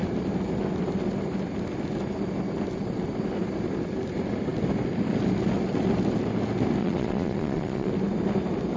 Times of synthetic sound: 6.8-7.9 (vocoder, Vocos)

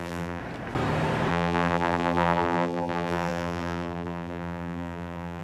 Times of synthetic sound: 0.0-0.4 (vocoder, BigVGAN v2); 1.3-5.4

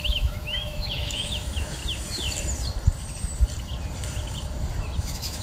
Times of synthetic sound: 0.0-1.8 (autoencoder, DAC-VAE); 5.0-5.4